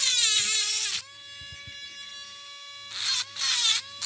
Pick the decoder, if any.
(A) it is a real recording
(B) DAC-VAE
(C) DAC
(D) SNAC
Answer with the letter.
A